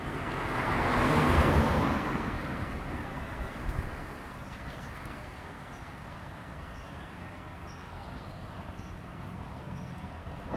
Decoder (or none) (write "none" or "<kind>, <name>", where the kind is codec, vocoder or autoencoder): codec, SNAC